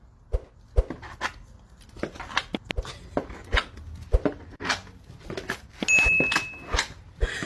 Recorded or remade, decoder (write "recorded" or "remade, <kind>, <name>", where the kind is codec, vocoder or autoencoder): recorded